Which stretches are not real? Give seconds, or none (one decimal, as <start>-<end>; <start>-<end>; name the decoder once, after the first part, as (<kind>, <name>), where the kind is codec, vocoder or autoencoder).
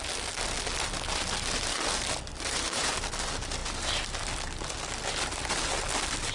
2.3-2.9 (vocoder, BigVGAN v2)